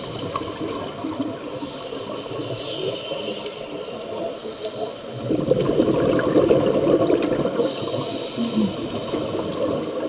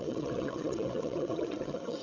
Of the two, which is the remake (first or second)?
second